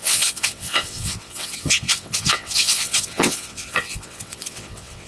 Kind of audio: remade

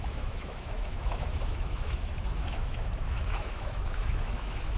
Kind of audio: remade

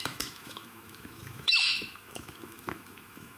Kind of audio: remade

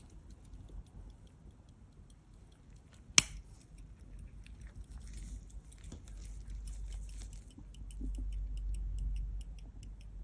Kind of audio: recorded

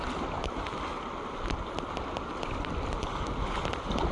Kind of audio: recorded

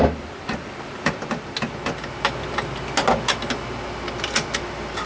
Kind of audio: recorded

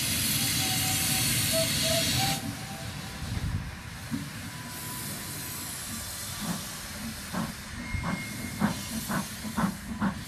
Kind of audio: recorded